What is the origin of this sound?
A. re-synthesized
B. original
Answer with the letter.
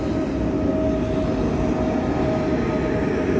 B